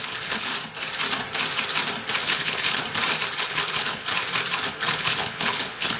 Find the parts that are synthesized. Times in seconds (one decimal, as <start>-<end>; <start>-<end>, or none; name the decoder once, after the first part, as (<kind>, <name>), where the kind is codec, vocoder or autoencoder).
0.0-0.5 (codec, HILCodec); 2.2-2.8; 3.4-4.1; 4.7-6.0

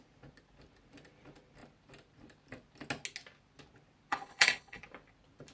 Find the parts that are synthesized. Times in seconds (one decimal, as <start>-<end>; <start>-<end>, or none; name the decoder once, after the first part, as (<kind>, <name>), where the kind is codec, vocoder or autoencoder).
4.1-4.8 (codec, HILCodec)

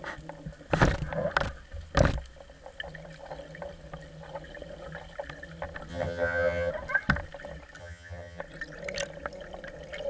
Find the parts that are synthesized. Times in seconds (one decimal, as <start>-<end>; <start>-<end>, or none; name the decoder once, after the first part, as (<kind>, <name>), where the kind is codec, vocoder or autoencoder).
5.9-6.7 (vocoder, HiFi-GAN); 7.8-8.4

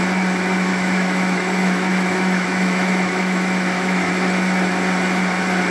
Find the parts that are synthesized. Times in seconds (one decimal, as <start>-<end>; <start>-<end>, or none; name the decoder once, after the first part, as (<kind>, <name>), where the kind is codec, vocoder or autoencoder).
0.7-4.1 (autoencoder, DAC-VAE)